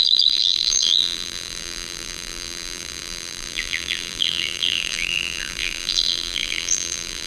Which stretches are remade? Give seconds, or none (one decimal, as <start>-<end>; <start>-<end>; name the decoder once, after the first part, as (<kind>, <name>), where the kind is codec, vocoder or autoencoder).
0.0-7.3 (vocoder, BigVGAN v2)